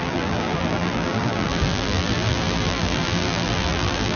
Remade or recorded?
remade